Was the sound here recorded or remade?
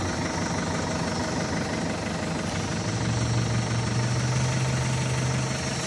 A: recorded